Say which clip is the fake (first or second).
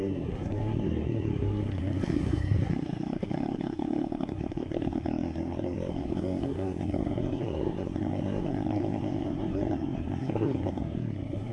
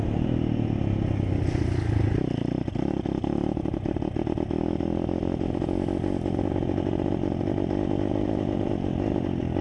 first